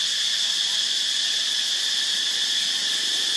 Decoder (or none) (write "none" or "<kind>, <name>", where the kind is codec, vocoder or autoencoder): none